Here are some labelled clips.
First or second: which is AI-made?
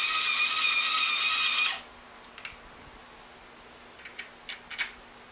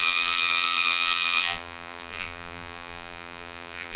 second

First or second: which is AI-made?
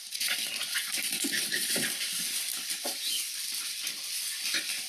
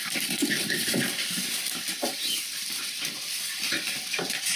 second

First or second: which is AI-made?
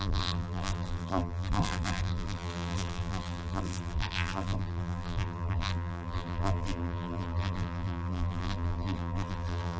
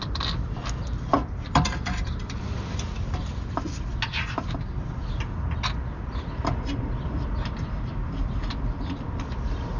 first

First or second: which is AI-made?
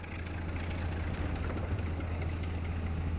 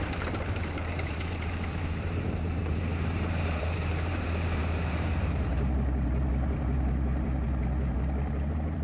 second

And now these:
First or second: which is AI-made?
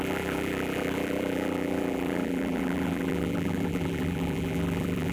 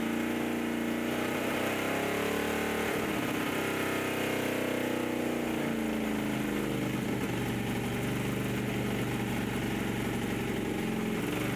first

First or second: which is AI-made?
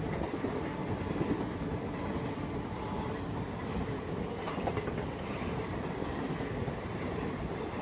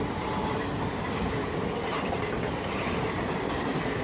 first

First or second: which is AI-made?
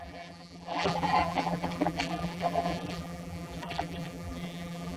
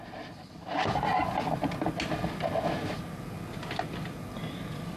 first